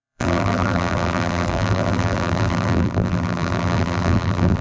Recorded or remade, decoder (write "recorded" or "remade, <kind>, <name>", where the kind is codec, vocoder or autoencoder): remade, vocoder, BigVGAN v2